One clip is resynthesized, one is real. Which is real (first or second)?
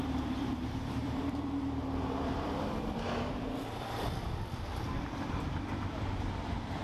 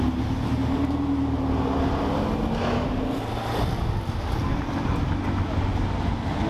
second